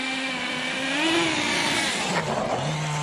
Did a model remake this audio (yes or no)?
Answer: no